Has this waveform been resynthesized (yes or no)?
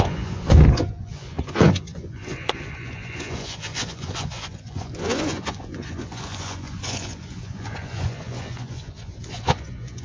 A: yes